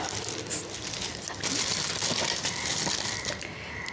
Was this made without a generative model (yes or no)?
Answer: yes